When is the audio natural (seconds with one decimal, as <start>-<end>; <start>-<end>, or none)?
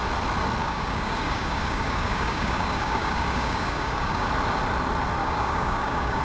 0.0-0.6; 4.3-5.2